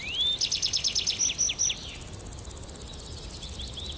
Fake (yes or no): no